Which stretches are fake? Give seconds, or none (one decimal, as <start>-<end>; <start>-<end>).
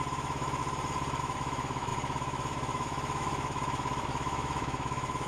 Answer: 0.0-0.6; 1.2-5.3